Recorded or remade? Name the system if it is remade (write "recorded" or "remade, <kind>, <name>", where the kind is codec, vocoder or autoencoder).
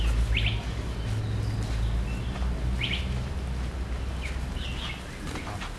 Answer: recorded